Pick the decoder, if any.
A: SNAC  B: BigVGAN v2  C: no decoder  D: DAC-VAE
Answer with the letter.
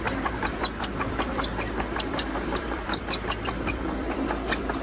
B